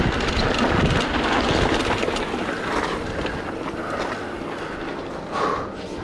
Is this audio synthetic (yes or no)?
no